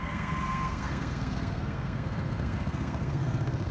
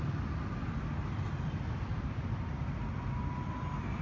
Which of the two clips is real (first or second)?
second